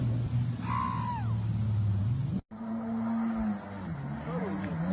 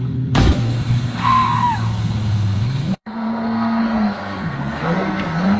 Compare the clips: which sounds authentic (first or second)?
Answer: first